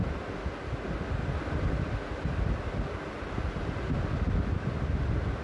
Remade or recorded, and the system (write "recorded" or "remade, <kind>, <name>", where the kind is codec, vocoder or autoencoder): recorded